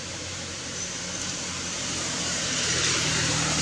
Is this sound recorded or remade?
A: remade